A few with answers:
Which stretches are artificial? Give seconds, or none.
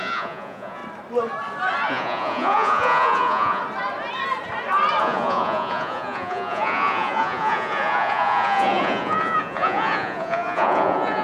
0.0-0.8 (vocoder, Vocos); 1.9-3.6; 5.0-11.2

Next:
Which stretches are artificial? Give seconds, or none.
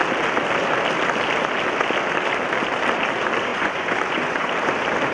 3.5-4.5 (vocoder, Vocos)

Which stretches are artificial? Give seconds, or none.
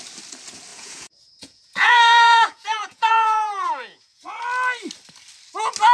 0.7-4.2 (vocoder, Vocos)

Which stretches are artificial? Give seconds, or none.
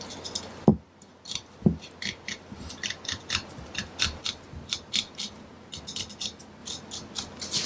none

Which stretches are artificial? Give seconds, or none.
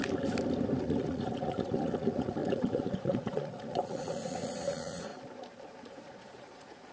0.8-5.1 (vocoder, Vocos); 5.8-6.9